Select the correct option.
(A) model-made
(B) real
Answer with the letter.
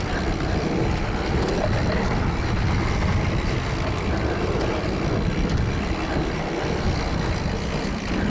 B